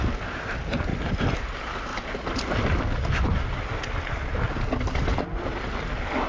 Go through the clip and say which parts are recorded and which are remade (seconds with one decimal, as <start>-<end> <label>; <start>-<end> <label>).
0.0-6.3 recorded